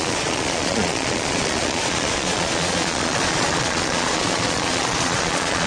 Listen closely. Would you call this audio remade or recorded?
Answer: remade